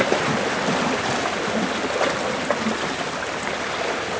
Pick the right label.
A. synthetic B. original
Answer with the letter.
B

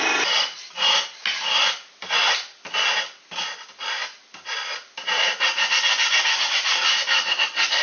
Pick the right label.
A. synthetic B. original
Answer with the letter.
B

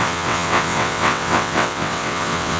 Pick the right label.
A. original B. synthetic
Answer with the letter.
B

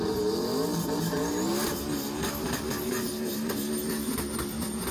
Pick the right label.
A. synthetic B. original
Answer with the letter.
B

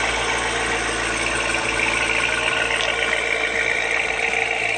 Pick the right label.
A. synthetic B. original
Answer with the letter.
B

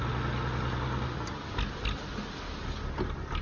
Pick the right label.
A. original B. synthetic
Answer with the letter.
A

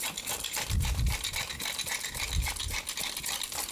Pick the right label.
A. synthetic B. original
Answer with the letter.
B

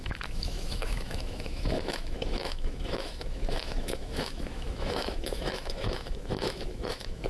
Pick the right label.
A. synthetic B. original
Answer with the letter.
A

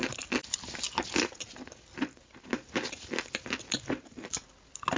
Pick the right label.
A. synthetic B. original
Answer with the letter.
B